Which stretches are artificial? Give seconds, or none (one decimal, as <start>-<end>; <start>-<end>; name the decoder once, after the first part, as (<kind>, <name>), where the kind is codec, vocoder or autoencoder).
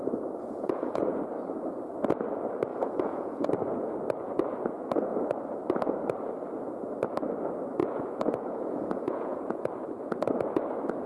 0.4-1.2 (vocoder, Vocos); 2.7-3.5; 7.8-9.8